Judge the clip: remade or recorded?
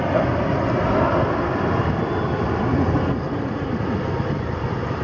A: recorded